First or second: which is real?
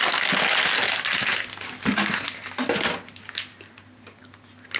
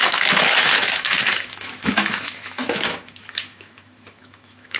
first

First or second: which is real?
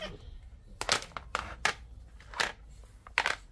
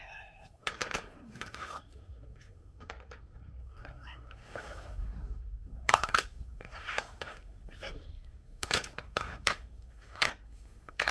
first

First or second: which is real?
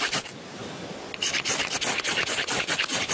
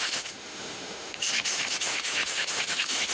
first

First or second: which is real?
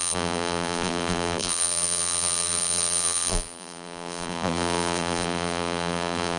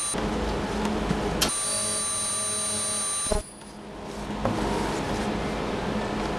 second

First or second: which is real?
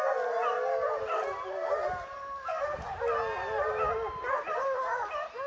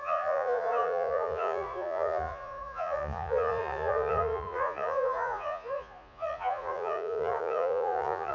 first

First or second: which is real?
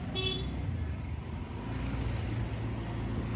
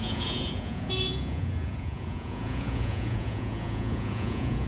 first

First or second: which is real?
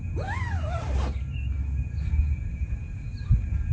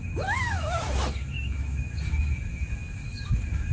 first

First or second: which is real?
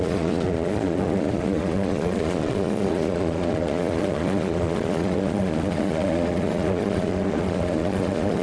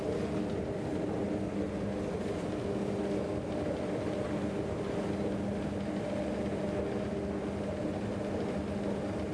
second